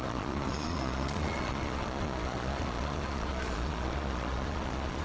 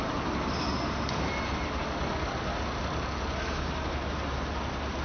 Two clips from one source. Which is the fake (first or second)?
first